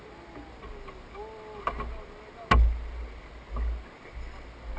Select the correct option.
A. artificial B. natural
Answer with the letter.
B